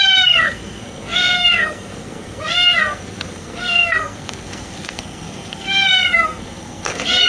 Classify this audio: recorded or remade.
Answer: remade